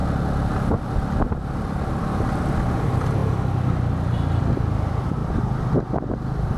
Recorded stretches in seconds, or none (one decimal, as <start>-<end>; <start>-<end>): 0.0-0.8; 3.2-4.4